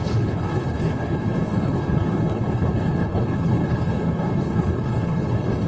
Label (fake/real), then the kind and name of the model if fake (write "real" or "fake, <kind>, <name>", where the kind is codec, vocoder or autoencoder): fake, codec, HILCodec